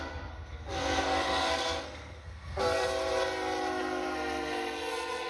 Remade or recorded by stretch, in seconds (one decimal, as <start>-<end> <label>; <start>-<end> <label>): 0.0-2.9 remade; 2.9-3.8 recorded; 3.8-5.3 remade